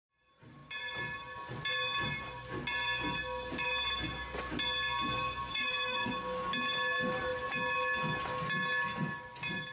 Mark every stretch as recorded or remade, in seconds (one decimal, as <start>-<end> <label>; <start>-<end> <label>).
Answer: 0.0-5.5 recorded; 5.5-6.1 remade; 6.1-9.7 recorded